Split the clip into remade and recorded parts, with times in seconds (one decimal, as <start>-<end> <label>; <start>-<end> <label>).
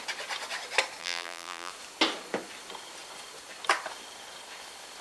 0.0-1.0 recorded; 1.0-1.7 remade; 1.7-5.0 recorded